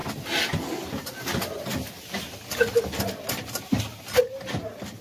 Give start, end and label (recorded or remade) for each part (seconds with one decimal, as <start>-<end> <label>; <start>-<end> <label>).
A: 0.0-5.0 recorded